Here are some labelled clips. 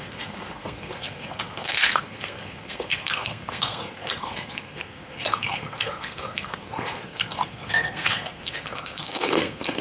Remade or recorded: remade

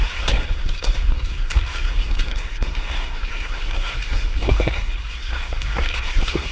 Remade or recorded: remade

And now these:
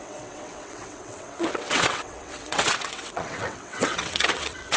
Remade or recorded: remade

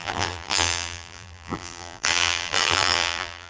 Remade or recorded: remade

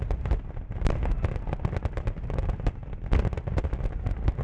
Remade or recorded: recorded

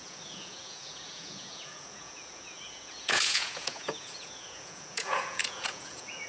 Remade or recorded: remade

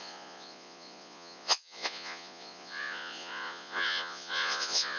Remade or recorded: remade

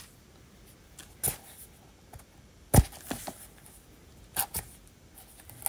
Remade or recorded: recorded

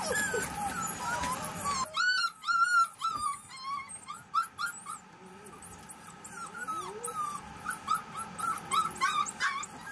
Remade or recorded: recorded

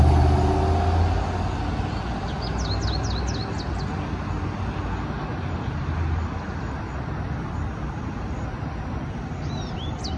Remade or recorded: recorded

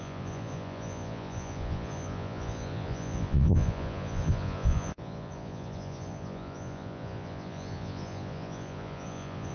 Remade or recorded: remade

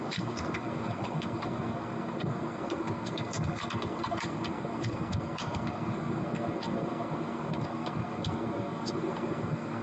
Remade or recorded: remade